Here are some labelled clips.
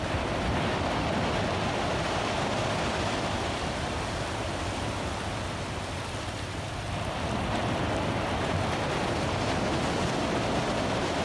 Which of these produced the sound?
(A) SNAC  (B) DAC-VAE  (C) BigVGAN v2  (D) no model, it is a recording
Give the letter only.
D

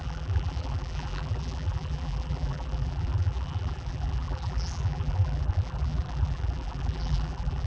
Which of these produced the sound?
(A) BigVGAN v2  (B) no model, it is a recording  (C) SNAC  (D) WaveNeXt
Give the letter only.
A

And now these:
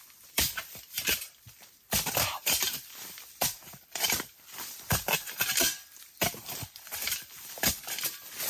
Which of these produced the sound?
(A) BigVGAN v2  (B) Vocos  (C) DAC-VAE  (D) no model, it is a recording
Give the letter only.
A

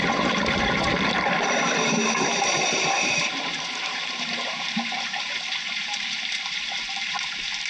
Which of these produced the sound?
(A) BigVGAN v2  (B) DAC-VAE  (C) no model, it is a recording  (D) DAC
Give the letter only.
A